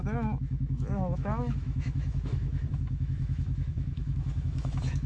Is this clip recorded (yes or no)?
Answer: no